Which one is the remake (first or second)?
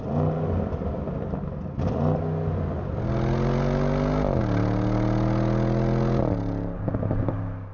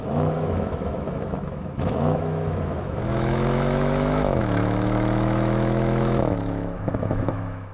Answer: second